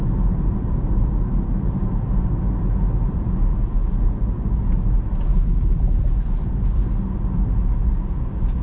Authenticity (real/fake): real